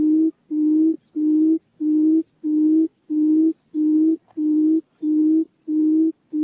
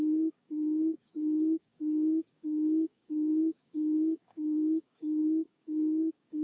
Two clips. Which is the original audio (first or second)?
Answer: first